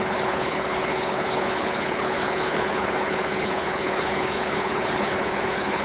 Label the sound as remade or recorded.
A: remade